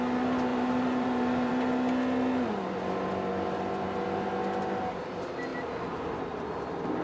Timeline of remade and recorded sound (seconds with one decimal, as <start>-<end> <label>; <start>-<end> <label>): 0.0-0.5 recorded; 0.5-1.5 remade; 1.5-5.5 recorded; 5.5-6.1 remade; 6.1-7.0 recorded